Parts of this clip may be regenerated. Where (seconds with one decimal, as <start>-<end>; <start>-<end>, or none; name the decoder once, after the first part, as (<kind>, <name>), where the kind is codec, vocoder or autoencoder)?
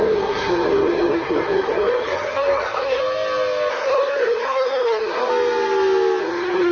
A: 0.0-3.0 (codec, SNAC); 3.7-5.3; 6.2-6.7